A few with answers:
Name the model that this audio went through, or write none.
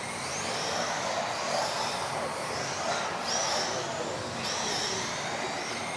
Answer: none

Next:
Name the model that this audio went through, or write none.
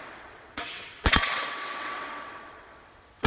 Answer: vocoder, WaveNeXt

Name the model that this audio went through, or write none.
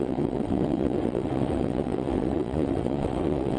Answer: vocoder, WaveNeXt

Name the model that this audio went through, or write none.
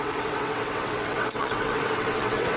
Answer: vocoder, WaveNeXt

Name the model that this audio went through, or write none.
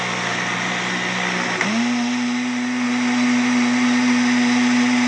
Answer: none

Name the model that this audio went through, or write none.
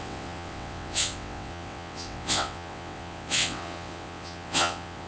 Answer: vocoder, WaveNeXt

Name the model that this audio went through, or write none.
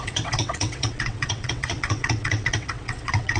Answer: vocoder, WaveNeXt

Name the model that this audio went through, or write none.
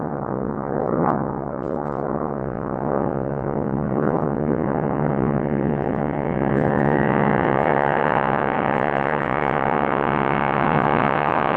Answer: vocoder, WaveNeXt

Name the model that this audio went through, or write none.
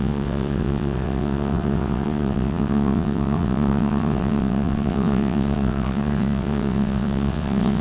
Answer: vocoder, WaveNeXt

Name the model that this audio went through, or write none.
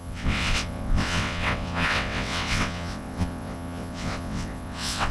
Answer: vocoder, WaveNeXt